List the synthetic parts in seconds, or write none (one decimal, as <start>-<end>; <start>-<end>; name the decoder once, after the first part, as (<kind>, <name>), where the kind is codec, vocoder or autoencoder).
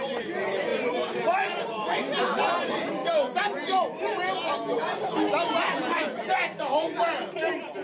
0.7-2.4 (vocoder, BigVGAN v2)